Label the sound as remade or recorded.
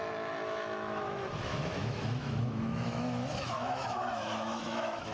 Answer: remade